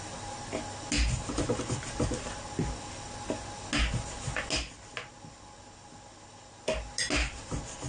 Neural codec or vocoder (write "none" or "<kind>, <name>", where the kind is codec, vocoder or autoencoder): none